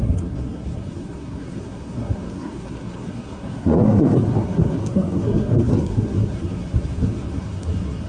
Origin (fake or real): fake